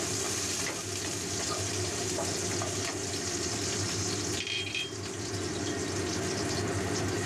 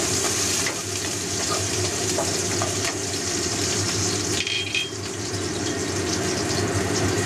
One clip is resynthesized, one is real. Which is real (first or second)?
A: first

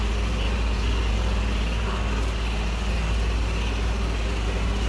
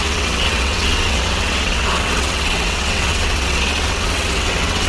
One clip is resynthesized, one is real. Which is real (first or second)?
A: first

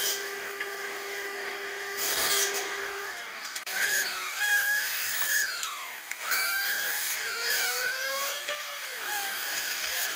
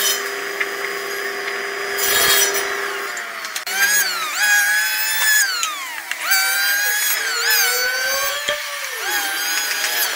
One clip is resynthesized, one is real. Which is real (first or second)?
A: second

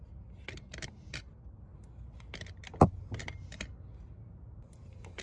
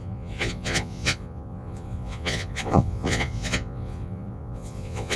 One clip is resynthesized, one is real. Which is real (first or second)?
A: first